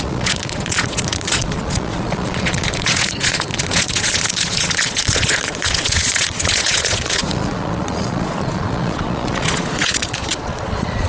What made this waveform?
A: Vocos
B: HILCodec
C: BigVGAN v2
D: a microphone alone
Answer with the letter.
A